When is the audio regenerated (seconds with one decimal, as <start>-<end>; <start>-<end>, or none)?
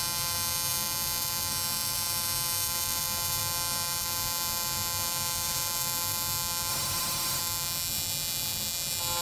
6.7-7.4